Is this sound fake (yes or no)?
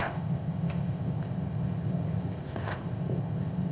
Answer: yes